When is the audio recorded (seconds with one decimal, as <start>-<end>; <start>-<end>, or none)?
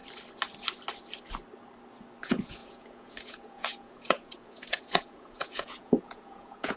0.0-2.2